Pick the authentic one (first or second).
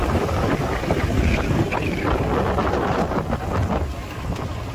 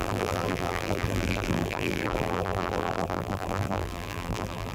first